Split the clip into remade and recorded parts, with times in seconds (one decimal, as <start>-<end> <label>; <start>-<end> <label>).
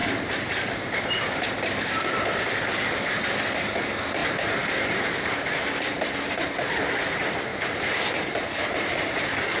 0.0-3.2 remade; 3.2-4.2 recorded; 4.2-6.9 remade; 6.9-7.5 recorded; 7.5-9.6 remade